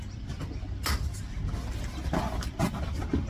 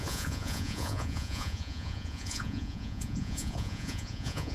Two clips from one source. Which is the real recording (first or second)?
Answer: first